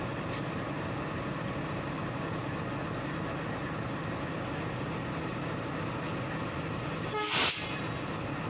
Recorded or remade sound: recorded